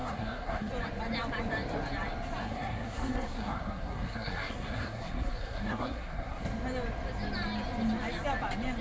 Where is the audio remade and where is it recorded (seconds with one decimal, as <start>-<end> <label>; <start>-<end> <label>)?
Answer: 0.0-0.7 remade; 0.7-2.4 recorded; 2.4-6.4 remade; 6.4-8.8 recorded